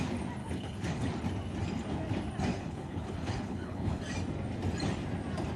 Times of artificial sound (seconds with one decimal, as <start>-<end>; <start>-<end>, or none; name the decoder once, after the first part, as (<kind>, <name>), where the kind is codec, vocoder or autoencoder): 0.4-1.1 (codec, HILCodec); 2.5-4.0